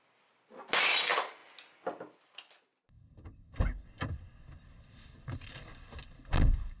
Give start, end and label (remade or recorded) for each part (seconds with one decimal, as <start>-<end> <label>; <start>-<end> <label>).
0.0-6.8 recorded